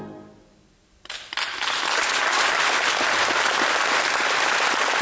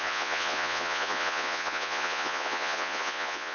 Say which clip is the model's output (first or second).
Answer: second